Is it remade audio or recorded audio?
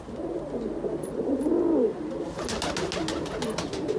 recorded